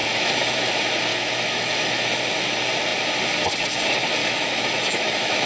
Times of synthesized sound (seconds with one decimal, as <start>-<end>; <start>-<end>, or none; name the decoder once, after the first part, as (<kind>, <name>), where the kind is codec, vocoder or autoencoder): 0.0-0.7 (autoencoder, DAC-VAE); 1.1-2.2; 4.2-5.5